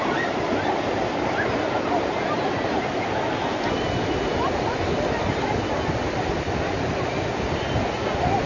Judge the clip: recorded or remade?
recorded